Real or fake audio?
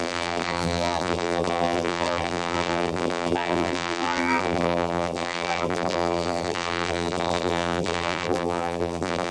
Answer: fake